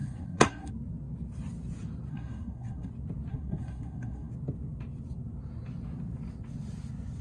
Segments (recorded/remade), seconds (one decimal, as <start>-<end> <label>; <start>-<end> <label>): 0.0-0.7 remade; 0.7-2.1 recorded; 2.1-2.9 remade; 2.9-3.3 recorded; 3.3-4.3 remade; 4.3-7.2 recorded